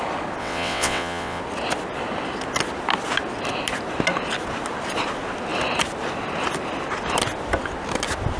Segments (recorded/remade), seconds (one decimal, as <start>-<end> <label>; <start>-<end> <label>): 0.0-0.4 recorded; 0.4-1.4 remade; 1.4-8.4 recorded